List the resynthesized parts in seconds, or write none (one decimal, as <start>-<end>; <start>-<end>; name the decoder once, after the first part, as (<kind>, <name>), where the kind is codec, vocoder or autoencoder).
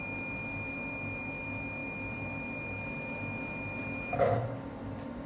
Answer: none